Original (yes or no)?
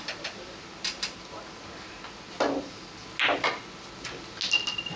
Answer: yes